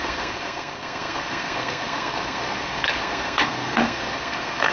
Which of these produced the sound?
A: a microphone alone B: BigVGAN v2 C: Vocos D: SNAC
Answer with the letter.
D